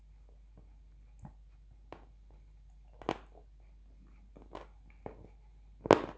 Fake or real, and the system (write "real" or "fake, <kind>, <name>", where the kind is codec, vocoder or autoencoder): real